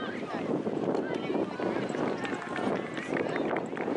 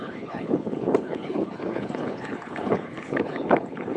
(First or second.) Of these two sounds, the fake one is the second